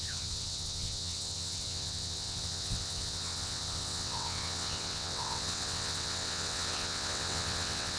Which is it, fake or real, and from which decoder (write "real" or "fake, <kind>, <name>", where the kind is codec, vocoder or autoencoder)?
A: fake, vocoder, WaveNeXt